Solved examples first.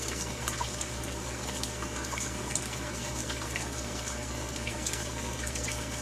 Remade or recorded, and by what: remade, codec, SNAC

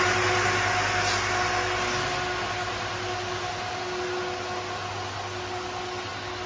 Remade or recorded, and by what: recorded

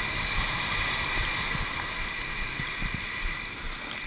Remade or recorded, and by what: recorded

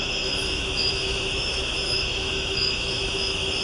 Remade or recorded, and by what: remade, autoencoder, DAC-VAE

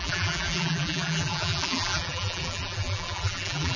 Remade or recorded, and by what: remade, vocoder, BigVGAN v2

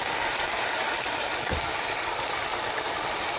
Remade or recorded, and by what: recorded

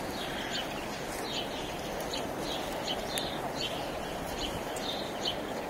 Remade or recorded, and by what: recorded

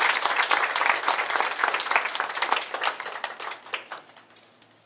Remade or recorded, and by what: recorded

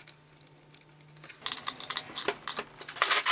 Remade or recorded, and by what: recorded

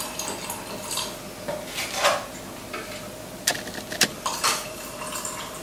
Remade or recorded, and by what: recorded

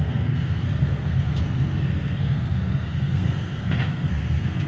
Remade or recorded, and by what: remade, codec, SNAC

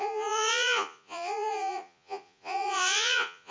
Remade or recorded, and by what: remade, vocoder, Vocos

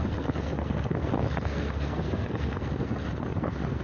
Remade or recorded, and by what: remade, codec, SNAC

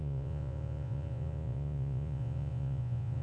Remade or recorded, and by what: remade, vocoder, Vocos